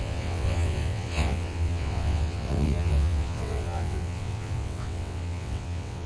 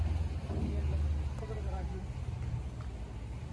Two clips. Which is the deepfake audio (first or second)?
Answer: first